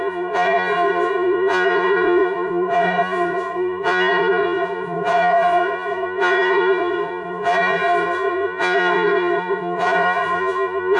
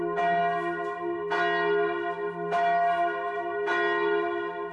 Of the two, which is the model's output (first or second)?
first